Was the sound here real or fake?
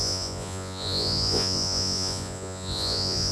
fake